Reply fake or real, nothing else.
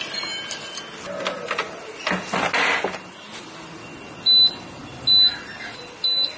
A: real